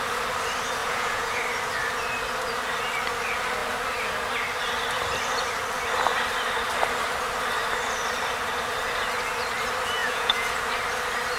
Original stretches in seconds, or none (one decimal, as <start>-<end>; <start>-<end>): 0.0-0.8; 1.4-10.0; 10.5-11.4